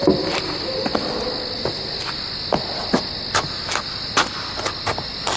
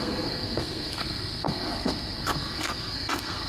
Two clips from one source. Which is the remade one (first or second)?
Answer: second